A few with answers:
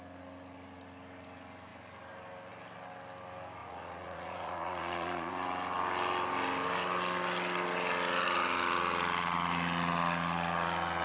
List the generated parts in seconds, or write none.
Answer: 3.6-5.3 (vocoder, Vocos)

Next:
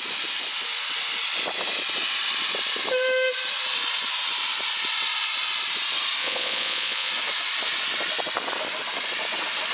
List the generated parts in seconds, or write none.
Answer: 6.2-7.1 (vocoder, Vocos)